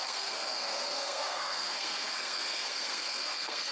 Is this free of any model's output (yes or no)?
no